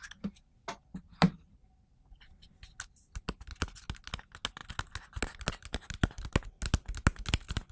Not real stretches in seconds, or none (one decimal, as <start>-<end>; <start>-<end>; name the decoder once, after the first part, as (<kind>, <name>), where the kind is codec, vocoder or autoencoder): none